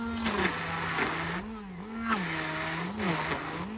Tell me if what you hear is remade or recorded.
recorded